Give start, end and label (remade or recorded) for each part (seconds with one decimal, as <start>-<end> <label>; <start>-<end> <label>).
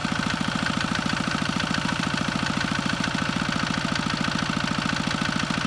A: 0.0-3.4 remade; 3.4-5.7 recorded